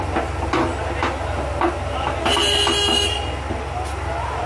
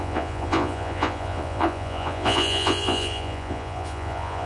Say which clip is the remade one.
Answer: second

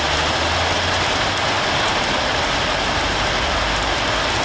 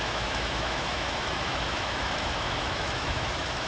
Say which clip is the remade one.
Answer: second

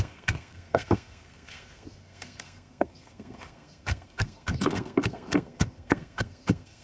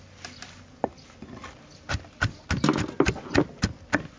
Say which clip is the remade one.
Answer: first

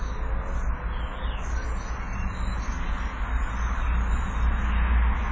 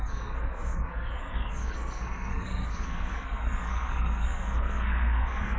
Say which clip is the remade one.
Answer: second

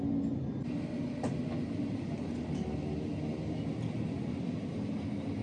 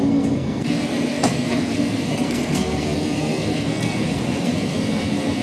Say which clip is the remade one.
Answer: second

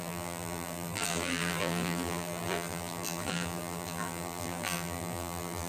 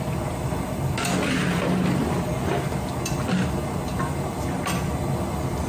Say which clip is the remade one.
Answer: first